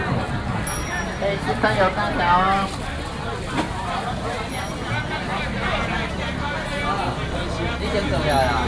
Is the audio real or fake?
real